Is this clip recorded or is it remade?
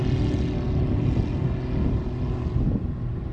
recorded